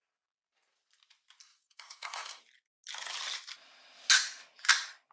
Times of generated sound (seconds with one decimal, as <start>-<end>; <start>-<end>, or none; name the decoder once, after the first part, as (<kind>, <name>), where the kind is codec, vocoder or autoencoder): 1.4-2.4 (codec, SNAC)